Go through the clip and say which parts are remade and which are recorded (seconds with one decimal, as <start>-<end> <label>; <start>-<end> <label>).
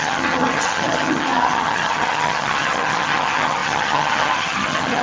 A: 0.0-5.0 remade